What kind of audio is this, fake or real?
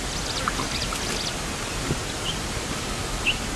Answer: real